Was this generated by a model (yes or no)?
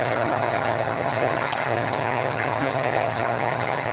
yes